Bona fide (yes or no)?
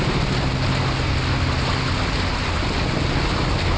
yes